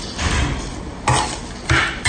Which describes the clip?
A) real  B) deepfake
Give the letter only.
A